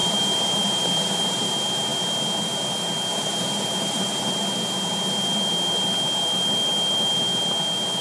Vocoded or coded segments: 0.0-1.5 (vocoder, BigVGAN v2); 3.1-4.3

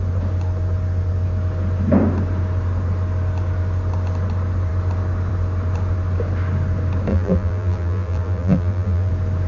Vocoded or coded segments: 7.1-9.1 (vocoder, BigVGAN v2)

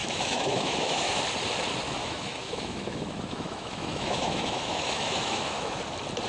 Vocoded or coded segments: 0.0-1.2 (autoencoder, DAC-VAE); 2.0-5.8

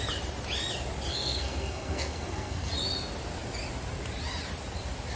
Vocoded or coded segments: 1.1-2.7 (codec, SNAC)

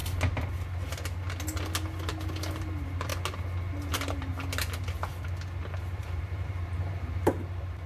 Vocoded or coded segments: 2.6-3.1 (vocoder, BigVGAN v2); 3.9-4.3; 5.8-7.9